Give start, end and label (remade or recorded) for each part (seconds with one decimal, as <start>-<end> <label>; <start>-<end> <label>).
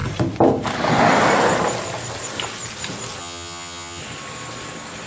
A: 0.0-3.2 recorded; 3.2-4.0 remade; 4.0-5.1 recorded